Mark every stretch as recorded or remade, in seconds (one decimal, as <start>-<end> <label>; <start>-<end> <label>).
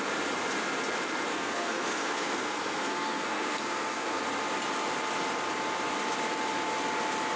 0.0-1.3 recorded; 1.3-4.2 remade; 4.2-7.4 recorded